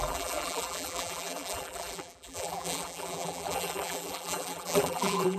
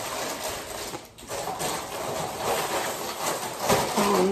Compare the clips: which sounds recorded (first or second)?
second